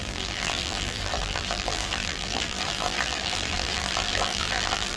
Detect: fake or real fake